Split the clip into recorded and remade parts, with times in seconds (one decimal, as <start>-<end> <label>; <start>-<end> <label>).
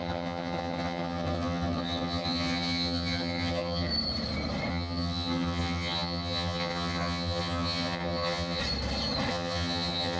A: 0.0-3.9 remade; 3.9-4.7 recorded; 4.7-8.6 remade; 8.6-9.3 recorded; 9.3-10.2 remade